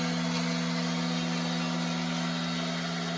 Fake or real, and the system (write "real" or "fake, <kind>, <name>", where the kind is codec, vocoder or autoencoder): real